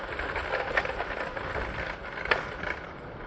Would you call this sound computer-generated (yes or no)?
no